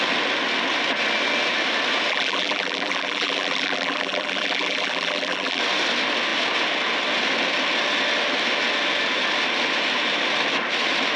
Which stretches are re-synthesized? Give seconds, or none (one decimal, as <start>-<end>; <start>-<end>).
2.1-5.6